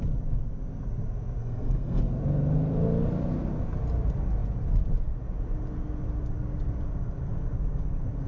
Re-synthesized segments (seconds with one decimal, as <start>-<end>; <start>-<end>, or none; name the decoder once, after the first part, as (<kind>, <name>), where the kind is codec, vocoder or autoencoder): 1.4-2.0 (codec, SNAC)